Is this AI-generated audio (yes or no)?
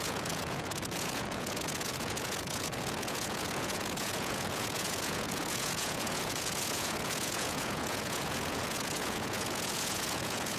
yes